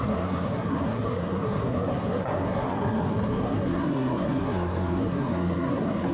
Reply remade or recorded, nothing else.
remade